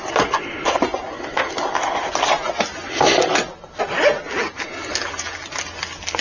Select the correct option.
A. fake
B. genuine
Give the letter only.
B